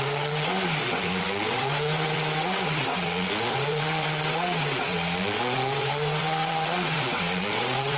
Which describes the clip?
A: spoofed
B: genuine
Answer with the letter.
A